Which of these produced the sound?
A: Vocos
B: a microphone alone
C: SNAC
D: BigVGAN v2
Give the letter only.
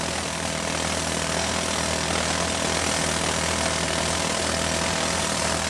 B